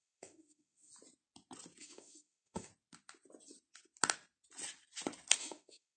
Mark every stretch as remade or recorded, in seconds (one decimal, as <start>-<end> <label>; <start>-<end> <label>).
0.0-0.9 remade; 0.9-1.8 recorded; 1.8-2.7 remade; 2.7-5.4 recorded; 5.4-6.0 remade